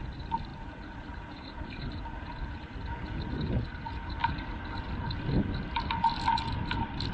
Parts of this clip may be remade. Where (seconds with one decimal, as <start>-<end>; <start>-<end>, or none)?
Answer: 0.5-2.5